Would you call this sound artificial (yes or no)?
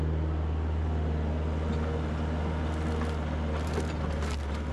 no